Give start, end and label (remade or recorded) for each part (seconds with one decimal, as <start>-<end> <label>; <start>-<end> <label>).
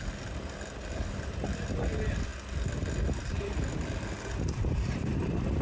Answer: 0.0-5.6 recorded